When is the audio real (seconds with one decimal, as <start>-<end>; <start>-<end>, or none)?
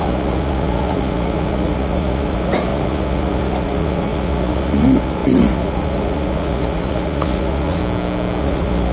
7.8-8.4